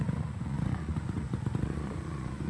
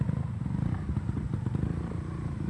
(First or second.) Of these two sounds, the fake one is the first